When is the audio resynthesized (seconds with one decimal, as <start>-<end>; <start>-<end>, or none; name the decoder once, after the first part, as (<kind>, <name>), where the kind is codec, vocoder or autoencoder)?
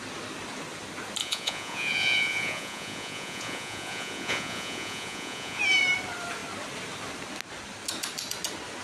1.2-5.6 (vocoder, Vocos)